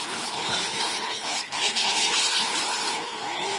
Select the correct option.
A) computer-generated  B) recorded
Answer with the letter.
A